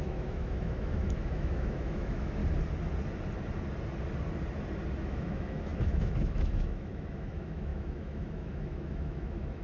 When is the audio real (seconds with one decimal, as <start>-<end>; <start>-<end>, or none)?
2.4-5.0